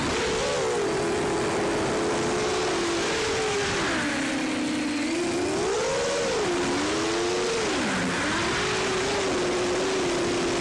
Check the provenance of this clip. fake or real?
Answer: real